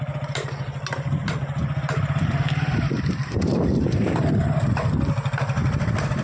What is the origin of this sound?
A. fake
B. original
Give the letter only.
B